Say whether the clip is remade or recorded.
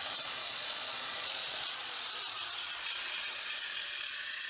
remade